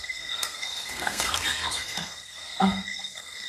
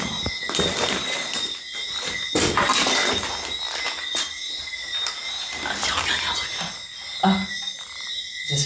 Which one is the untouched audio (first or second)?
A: second